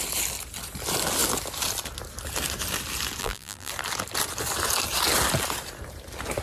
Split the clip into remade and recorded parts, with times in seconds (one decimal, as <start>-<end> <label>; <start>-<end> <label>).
0.0-3.2 recorded; 3.2-3.7 remade; 3.7-6.4 recorded